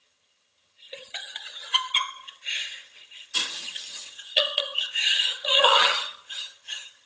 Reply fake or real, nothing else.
fake